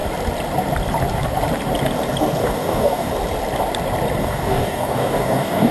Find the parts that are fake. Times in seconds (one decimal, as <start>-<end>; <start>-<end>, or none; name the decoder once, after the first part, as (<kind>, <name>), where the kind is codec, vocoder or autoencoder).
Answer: 2.4-3.1 (codec, DAC); 4.2-5.7